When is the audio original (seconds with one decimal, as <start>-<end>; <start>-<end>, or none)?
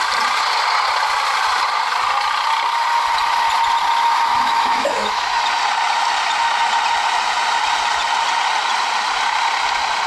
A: 0.0-4.3; 5.4-10.1